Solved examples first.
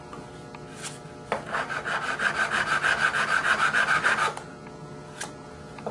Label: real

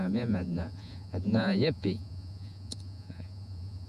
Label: fake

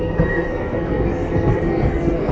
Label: fake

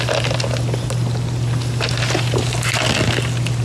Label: real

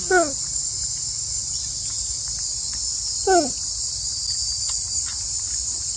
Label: real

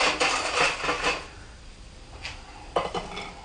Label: real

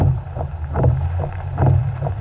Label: fake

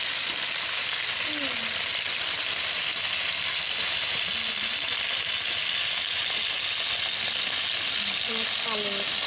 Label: real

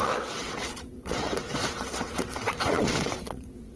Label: fake